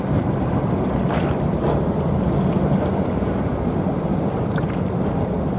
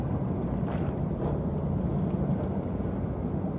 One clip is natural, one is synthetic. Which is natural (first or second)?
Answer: second